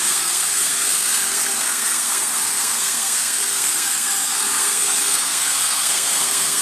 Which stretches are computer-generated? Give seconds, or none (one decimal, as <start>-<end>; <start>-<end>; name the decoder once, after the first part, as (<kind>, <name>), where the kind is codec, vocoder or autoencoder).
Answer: 0.0-6.6 (codec, SNAC)